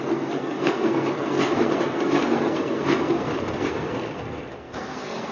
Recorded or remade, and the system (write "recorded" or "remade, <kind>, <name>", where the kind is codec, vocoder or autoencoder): remade, codec, SNAC